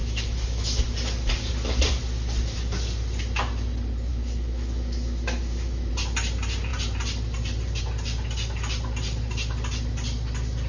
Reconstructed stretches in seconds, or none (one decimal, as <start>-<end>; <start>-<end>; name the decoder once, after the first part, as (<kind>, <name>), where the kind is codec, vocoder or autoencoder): 0.0-0.8 (autoencoder, DAC-VAE); 4.1-5.9